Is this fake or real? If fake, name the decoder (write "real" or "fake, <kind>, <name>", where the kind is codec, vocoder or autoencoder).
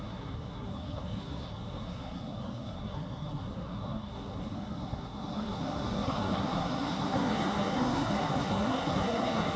fake, codec, SNAC